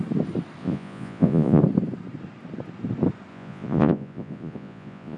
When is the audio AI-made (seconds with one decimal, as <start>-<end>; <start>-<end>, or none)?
0.6-1.6; 3.3-5.2